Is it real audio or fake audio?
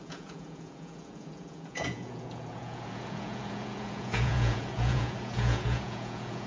fake